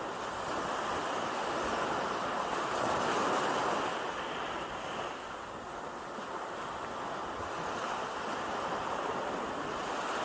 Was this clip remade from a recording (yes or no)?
no